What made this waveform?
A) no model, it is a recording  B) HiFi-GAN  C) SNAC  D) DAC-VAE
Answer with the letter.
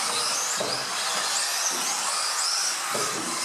A